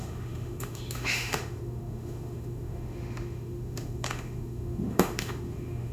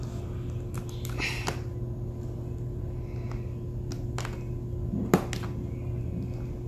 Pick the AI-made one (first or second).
first